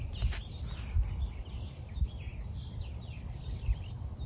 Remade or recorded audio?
recorded